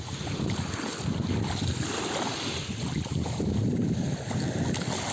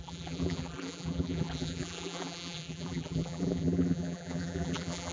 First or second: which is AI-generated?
second